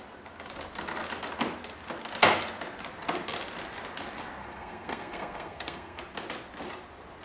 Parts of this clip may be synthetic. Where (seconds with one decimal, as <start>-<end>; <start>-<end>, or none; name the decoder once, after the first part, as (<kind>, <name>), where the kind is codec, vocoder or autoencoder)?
4.4-6.0 (codec, SNAC)